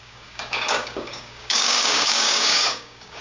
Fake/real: fake